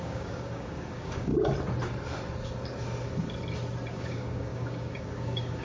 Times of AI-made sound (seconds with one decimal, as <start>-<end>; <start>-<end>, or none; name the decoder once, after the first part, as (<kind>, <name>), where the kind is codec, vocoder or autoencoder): 0.0-1.3 (codec, DAC); 3.9-5.6